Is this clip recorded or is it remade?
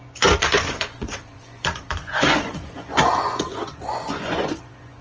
remade